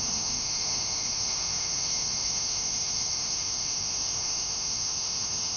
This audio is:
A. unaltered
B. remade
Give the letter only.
B